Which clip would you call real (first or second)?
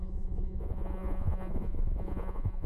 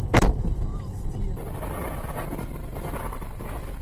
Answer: second